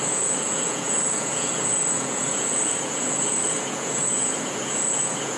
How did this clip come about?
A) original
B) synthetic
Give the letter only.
B